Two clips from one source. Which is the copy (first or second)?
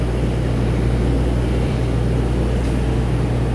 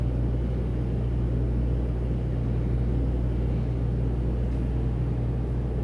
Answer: first